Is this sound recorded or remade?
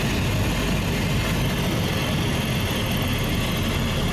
recorded